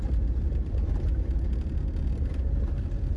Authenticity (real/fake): real